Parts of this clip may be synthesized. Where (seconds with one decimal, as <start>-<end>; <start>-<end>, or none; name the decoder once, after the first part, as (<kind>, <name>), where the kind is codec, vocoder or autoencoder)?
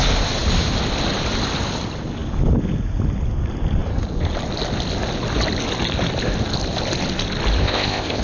7.6-8.2 (codec, ZipCodec)